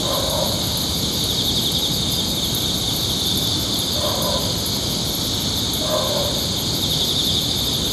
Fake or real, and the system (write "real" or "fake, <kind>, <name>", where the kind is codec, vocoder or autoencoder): real